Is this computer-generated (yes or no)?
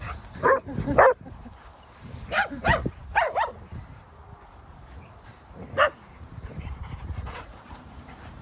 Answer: yes